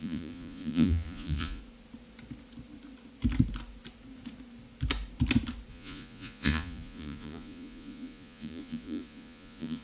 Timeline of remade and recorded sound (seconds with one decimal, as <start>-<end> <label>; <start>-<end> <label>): 0.0-1.6 remade; 1.6-5.7 recorded; 5.7-9.8 remade